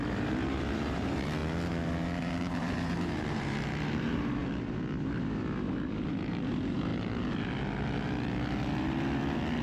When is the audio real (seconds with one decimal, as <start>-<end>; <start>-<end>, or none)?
1.4-2.3; 4.4-6.1; 6.9-9.6